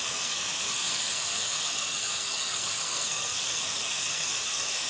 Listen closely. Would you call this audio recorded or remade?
remade